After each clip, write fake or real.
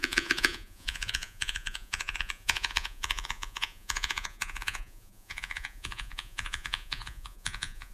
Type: fake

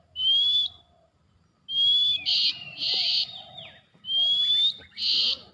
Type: real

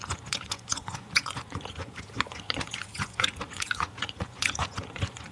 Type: fake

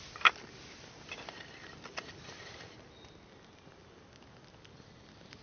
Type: real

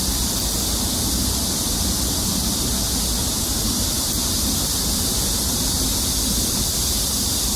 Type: real